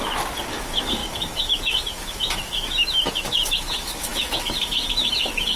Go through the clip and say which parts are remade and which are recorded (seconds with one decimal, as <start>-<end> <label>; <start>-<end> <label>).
0.0-0.6 recorded; 0.6-5.6 remade